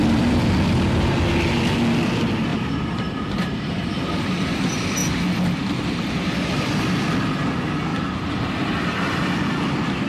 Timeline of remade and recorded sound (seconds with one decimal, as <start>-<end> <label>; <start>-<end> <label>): 0.0-2.5 recorded; 2.5-3.9 remade; 3.9-7.9 recorded; 7.9-8.5 remade; 8.5-10.1 recorded

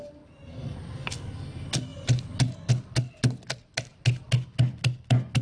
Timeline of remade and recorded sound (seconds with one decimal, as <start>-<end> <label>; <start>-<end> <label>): 0.0-5.4 recorded

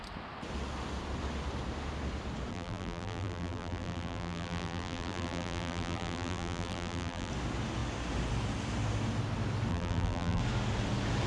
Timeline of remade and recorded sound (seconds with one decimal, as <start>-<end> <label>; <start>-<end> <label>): 0.0-2.5 recorded; 2.5-7.3 remade; 7.3-9.7 recorded; 9.7-10.4 remade; 10.4-11.3 recorded

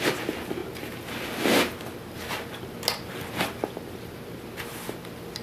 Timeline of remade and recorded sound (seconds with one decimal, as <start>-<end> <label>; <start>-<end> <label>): 0.0-5.4 recorded

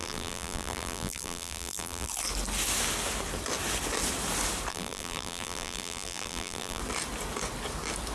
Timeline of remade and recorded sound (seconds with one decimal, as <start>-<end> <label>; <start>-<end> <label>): 0.0-2.1 remade; 2.1-4.7 recorded; 4.7-6.8 remade; 6.8-8.1 recorded

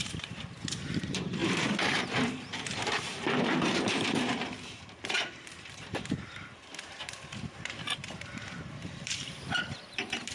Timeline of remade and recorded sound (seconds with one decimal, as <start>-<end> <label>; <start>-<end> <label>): 0.0-10.3 remade

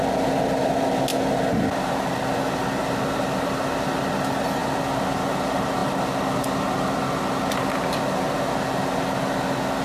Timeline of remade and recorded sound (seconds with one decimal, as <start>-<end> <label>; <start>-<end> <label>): 0.0-9.8 recorded

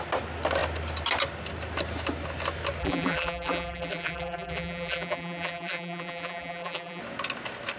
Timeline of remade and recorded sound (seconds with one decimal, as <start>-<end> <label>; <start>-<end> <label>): 0.0-2.8 recorded; 2.8-7.0 remade; 7.0-7.8 recorded